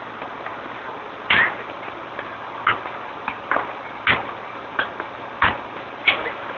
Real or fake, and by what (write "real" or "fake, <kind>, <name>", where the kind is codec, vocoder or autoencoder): real